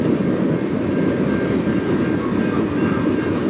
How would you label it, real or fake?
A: real